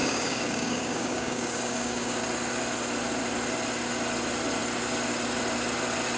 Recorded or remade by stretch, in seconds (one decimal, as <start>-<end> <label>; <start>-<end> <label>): 0.0-2.2 remade; 2.2-6.2 recorded